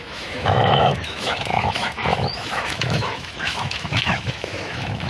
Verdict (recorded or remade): remade